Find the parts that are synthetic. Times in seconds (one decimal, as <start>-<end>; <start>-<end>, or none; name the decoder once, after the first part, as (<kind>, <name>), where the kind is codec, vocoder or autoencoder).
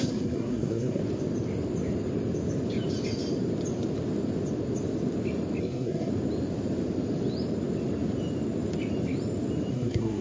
0.0-1.0 (codec, SNAC); 5.6-6.1; 9.7-10.2